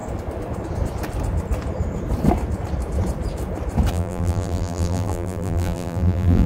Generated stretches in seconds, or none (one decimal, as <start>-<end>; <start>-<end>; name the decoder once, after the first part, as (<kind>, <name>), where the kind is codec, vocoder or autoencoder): 3.9-6.5 (vocoder, BigVGAN v2)